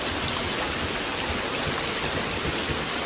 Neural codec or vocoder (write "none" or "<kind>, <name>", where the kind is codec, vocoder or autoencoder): none